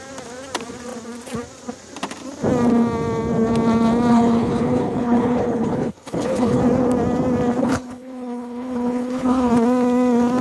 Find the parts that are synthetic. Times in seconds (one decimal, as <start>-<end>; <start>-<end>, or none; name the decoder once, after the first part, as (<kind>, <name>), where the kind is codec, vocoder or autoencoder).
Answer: 4.1-6.6 (codec, HILCodec); 7.6-9.5